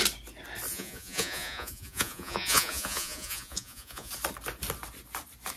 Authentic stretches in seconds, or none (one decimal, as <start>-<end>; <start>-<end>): 0.0-0.7; 4.1-5.6